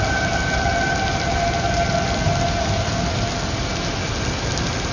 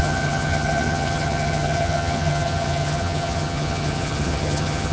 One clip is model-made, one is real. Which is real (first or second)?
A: first